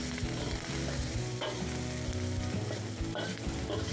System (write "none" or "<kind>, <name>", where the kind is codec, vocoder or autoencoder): none